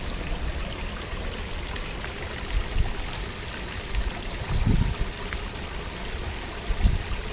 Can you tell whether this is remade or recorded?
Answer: recorded